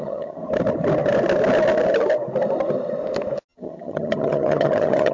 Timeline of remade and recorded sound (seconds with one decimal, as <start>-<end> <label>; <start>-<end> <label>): 0.0-0.4 remade; 0.4-3.5 recorded; 3.5-5.1 remade